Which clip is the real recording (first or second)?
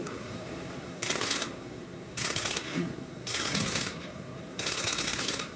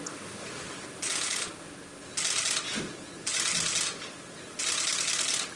second